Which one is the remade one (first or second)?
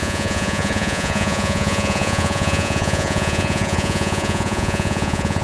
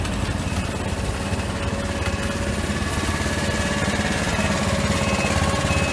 first